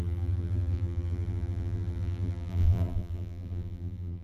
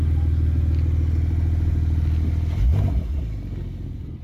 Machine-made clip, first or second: first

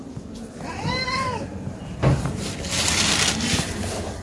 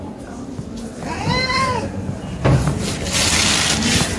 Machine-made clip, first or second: first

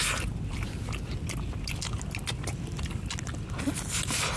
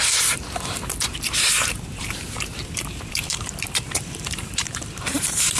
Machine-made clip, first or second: second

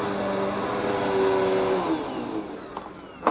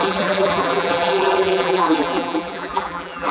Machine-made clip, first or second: second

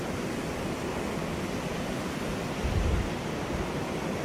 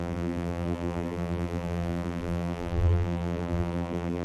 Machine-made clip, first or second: second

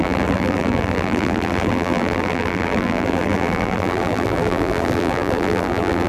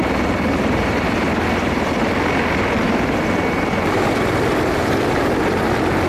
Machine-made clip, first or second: first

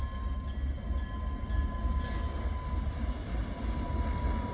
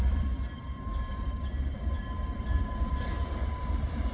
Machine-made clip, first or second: second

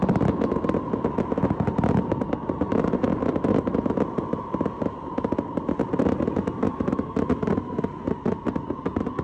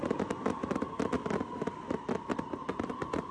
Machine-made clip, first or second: second